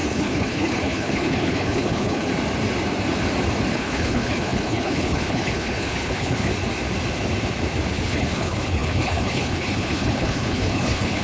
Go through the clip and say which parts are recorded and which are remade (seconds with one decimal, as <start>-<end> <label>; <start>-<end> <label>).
0.0-2.3 remade; 2.3-3.7 recorded; 3.7-6.5 remade; 6.5-7.9 recorded; 7.9-11.2 remade